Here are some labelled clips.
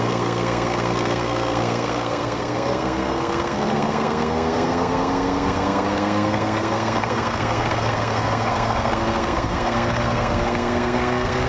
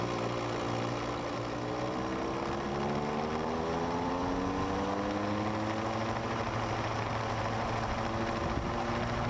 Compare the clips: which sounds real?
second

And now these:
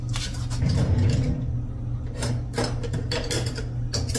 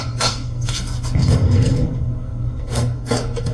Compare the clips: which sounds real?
first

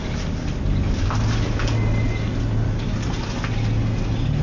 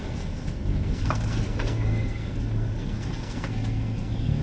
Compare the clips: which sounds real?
first